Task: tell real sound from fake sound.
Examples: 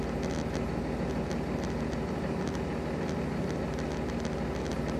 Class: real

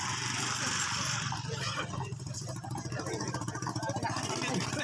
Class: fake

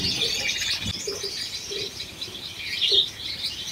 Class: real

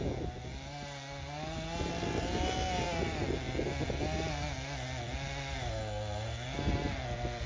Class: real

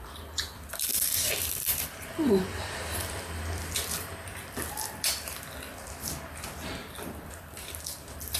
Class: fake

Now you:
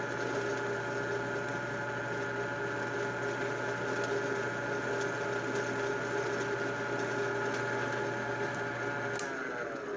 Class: real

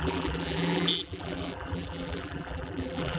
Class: fake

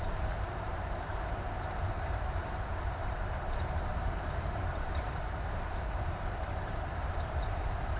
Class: fake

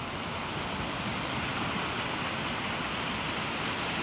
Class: real